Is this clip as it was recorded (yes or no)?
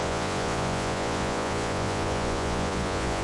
no